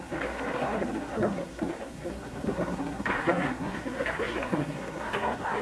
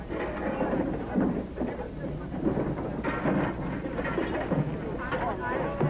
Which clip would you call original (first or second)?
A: second